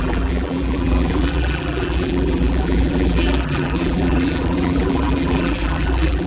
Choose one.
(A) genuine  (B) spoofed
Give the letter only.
B